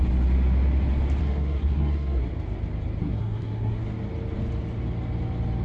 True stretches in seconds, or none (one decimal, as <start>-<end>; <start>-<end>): 0.0-1.2; 2.3-3.0; 3.8-5.6